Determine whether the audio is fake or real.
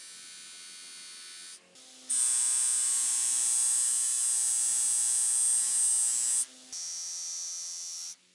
real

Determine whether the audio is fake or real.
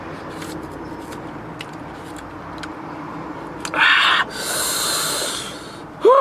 real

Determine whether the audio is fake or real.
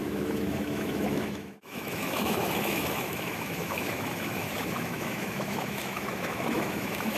fake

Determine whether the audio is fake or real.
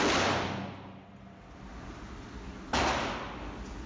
real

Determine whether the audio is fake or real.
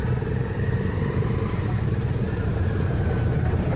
fake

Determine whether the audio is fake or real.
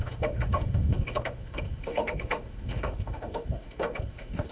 fake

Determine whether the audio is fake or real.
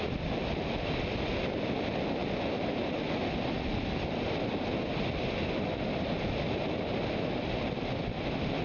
real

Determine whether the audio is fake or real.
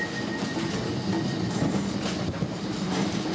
real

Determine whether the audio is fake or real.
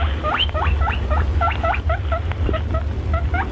real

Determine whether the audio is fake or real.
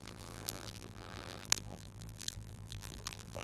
fake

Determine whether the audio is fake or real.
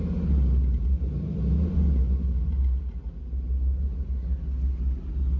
real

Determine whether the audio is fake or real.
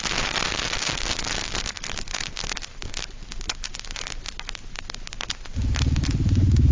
real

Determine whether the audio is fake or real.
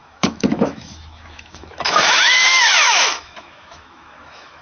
fake